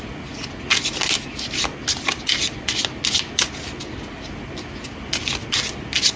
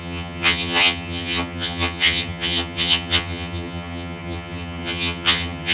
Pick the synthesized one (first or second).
second